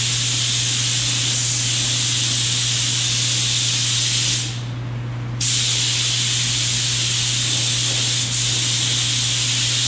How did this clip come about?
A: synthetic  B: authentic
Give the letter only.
B